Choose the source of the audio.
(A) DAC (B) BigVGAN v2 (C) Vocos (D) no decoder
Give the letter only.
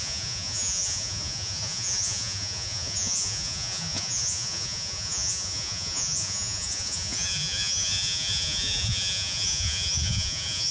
C